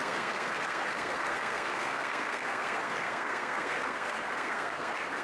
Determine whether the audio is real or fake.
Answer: fake